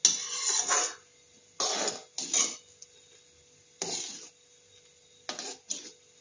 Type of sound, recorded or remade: recorded